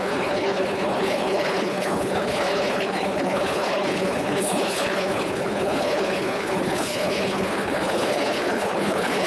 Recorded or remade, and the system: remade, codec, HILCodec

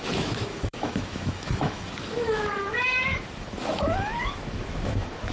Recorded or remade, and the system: remade, autoencoder, DAC-VAE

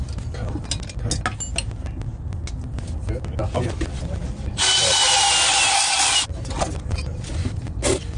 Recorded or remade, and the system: recorded